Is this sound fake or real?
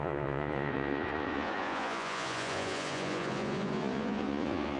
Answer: fake